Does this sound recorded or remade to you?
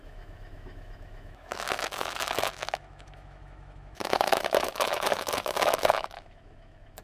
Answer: remade